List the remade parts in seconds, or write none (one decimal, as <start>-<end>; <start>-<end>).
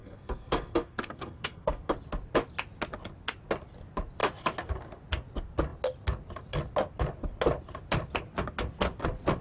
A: 0.0-1.9